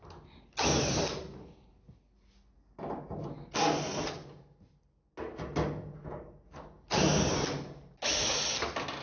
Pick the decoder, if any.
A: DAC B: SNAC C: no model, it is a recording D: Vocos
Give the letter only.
C